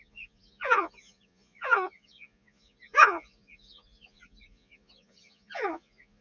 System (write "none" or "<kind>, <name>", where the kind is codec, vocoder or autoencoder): vocoder, Vocos